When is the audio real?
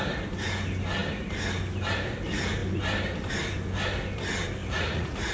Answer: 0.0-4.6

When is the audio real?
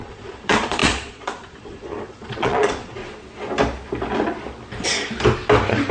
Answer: 3.0-5.9